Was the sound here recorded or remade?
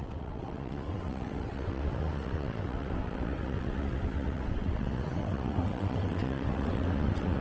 remade